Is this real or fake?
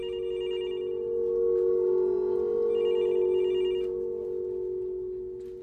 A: real